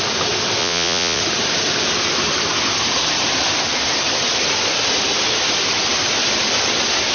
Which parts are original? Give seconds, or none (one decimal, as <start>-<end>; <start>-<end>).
0.0-0.6; 1.2-7.1